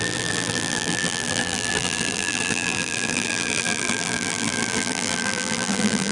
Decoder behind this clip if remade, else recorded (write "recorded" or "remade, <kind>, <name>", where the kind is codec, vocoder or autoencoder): remade, vocoder, BigVGAN v2